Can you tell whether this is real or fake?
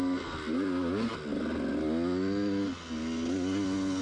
real